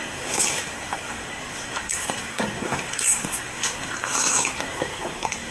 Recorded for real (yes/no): no